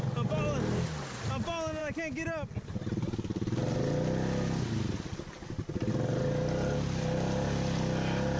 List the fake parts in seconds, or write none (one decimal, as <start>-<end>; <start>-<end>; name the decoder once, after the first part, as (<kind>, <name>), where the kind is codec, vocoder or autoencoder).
none